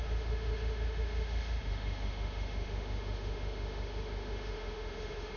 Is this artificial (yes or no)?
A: yes